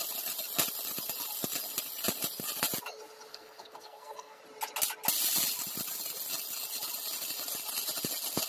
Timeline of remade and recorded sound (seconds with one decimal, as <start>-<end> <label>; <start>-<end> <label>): 0.0-3.3 recorded; 3.3-4.4 remade; 4.4-8.5 recorded